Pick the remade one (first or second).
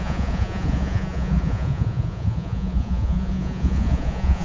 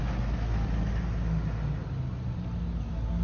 first